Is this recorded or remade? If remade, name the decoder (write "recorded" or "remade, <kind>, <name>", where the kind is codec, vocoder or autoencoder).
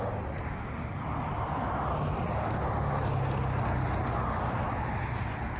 recorded